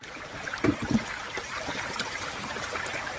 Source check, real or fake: fake